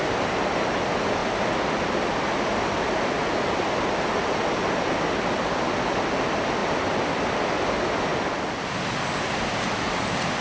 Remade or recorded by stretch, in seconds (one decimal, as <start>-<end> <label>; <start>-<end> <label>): 0.0-10.4 recorded